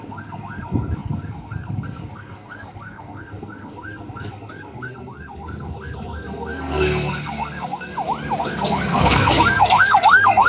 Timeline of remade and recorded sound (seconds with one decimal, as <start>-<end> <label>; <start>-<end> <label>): 0.0-7.9 remade; 7.9-8.4 recorded; 8.4-10.5 remade